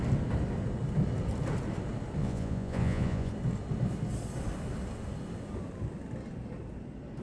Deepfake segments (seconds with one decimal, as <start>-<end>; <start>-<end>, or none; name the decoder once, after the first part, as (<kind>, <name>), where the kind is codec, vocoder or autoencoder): 2.2-3.3 (vocoder, Vocos)